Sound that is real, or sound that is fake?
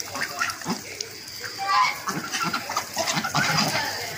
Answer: real